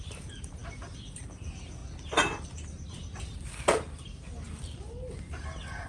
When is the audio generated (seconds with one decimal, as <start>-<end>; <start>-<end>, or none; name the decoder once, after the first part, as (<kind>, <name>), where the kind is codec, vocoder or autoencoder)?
none